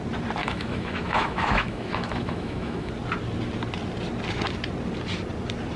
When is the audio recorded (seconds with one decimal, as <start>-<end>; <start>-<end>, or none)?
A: 0.0-0.4; 2.9-5.8